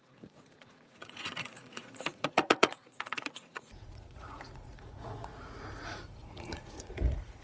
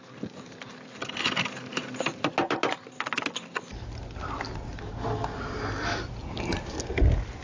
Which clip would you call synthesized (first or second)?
first